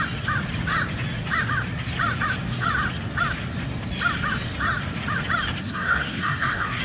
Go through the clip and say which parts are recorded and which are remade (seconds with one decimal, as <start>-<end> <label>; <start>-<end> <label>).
0.0-5.6 recorded; 5.6-6.8 remade

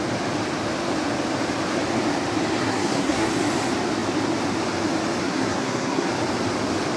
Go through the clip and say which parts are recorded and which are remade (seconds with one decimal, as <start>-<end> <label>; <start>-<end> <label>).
0.0-2.6 recorded; 2.6-3.3 remade; 3.3-5.2 recorded; 5.2-6.1 remade; 6.1-7.0 recorded

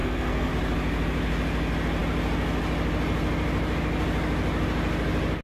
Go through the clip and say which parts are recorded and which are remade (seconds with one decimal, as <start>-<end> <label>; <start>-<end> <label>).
0.0-0.5 remade; 0.5-5.4 recorded

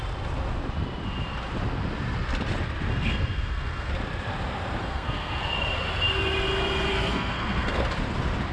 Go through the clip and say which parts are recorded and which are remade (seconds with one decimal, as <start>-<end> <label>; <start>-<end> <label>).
0.0-2.9 recorded; 2.9-3.9 remade; 3.9-4.8 recorded; 4.8-5.4 remade; 5.4-6.9 recorded; 6.9-7.8 remade; 7.8-8.5 recorded

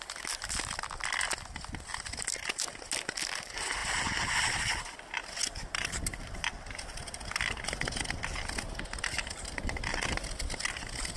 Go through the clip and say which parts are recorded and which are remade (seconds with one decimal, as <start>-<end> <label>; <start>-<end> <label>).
0.0-11.2 recorded

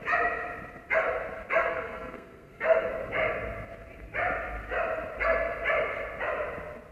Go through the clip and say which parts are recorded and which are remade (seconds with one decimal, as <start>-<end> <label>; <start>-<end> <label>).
0.0-1.6 recorded; 1.6-2.9 remade; 2.9-6.9 recorded

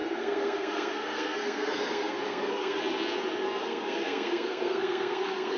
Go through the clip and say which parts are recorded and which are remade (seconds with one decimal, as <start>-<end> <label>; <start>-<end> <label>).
0.0-2.8 remade; 2.8-3.6 recorded; 3.6-5.6 remade

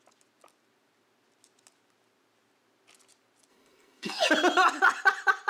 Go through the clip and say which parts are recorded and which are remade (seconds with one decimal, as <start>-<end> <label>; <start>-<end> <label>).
0.0-3.5 recorded; 3.5-4.3 remade; 4.3-5.5 recorded